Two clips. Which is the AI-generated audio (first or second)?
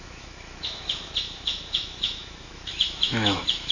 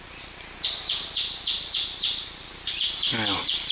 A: first